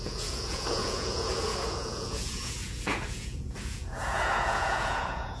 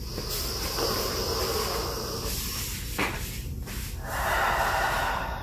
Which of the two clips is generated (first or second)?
first